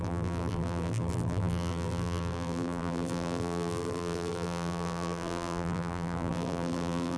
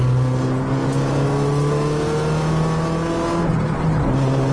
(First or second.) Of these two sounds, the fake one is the first